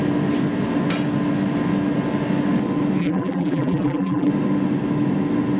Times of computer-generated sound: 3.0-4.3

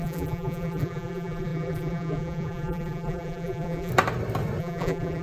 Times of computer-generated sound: 0.0-3.9; 4.6-5.2

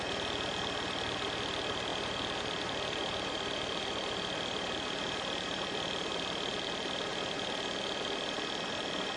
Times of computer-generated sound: 0.0-7.1; 8.7-9.2

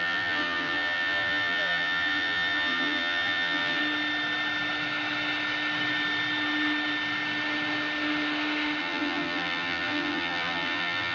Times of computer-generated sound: 0.0-3.8; 8.8-11.1

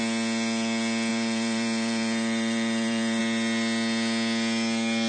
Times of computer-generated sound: 1.1-3.2

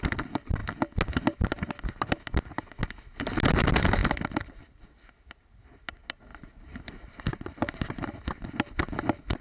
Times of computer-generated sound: 6.3-8.1